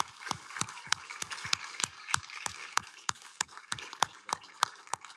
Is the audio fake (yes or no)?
yes